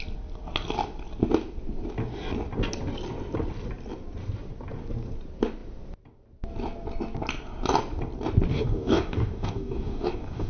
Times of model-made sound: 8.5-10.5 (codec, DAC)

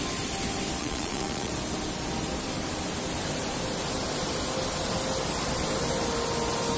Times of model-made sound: 0.8-1.5 (vocoder, Vocos)

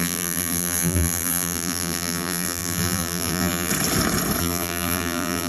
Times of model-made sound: 0.0-3.7 (vocoder, BigVGAN v2); 4.4-5.5

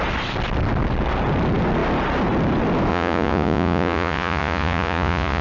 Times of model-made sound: 2.9-5.4 (vocoder, Vocos)